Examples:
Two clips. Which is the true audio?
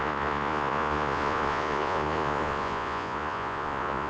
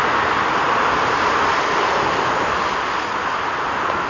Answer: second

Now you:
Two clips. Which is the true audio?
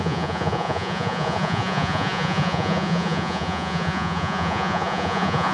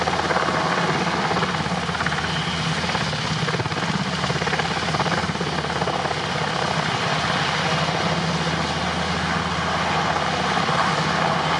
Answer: second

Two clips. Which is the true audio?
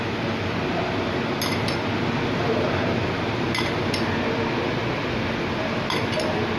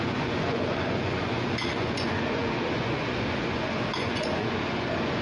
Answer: first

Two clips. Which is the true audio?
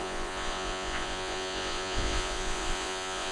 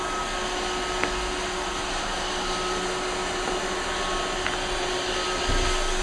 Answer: second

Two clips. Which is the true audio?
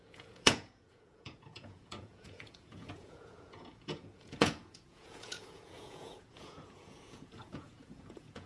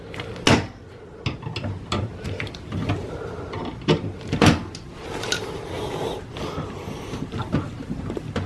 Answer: second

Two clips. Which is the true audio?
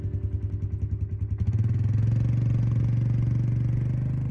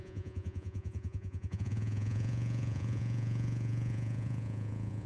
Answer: first